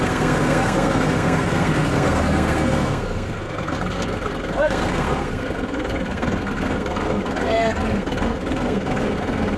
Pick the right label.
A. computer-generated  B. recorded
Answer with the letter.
A